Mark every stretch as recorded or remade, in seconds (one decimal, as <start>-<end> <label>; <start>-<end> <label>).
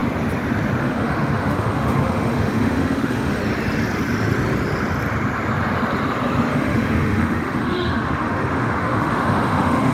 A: 0.0-0.8 recorded; 0.8-3.4 remade; 3.4-6.5 recorded; 6.5-9.9 remade